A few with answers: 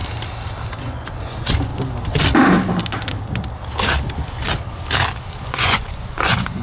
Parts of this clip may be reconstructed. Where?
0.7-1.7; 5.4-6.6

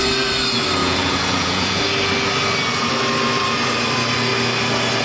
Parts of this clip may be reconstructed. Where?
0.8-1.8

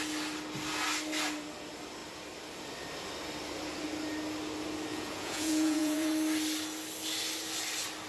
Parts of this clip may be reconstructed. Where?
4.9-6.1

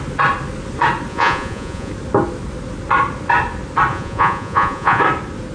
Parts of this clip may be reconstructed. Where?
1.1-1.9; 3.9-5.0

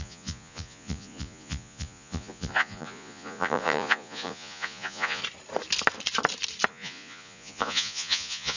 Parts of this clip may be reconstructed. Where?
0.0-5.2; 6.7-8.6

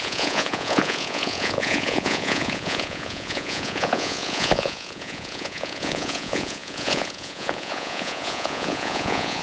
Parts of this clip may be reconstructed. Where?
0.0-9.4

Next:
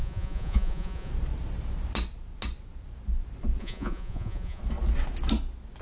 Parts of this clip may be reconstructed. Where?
0.0-1.1; 3.6-4.6

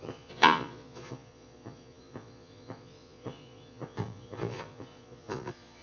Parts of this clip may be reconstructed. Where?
0.0-5.8